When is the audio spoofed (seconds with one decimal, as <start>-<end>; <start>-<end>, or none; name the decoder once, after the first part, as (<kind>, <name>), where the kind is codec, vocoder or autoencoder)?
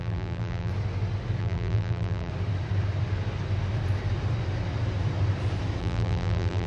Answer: 0.0-0.7 (vocoder, BigVGAN v2); 1.4-2.3; 5.8-6.7